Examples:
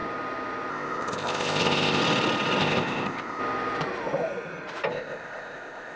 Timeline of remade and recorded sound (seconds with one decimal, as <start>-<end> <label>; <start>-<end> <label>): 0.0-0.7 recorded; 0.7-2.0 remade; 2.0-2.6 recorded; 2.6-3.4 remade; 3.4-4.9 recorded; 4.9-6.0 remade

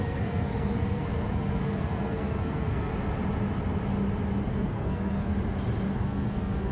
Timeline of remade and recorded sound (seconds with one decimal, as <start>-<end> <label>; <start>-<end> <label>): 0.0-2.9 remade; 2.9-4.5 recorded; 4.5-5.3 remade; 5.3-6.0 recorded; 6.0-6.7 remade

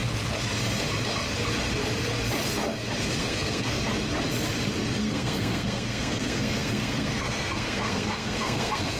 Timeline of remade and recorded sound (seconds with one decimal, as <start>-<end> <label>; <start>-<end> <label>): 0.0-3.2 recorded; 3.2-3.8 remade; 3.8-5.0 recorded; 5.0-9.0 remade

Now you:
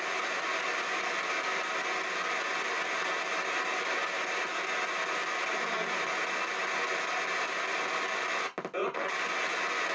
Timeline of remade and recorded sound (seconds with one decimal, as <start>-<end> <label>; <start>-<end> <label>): 0.0-9.9 recorded

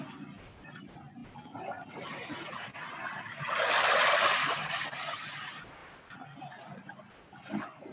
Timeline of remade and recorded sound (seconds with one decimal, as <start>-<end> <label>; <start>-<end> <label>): 0.0-1.2 recorded; 1.2-5.0 remade; 5.0-7.9 recorded

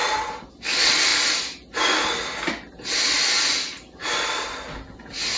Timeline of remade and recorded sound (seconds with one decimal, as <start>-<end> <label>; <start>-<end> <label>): 0.0-5.4 recorded

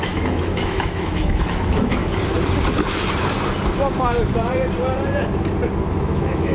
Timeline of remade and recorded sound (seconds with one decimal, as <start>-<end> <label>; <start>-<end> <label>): 0.0-2.0 remade; 2.0-5.9 recorded; 5.9-6.5 remade